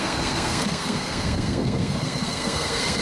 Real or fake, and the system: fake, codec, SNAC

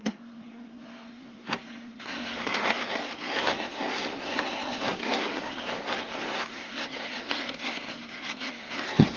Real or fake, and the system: fake, codec, SNAC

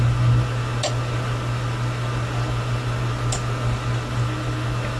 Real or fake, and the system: real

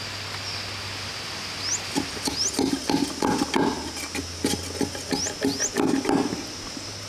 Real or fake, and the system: real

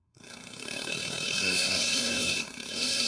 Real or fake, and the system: fake, codec, SNAC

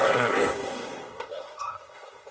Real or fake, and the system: fake, codec, SNAC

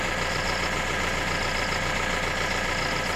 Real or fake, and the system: real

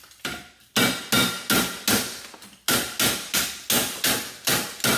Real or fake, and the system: real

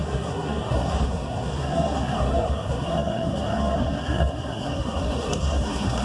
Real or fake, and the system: fake, codec, SNAC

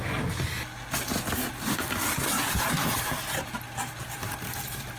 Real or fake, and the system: real